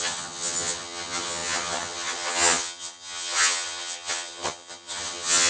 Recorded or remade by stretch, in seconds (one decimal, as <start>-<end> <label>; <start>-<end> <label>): 0.0-5.5 remade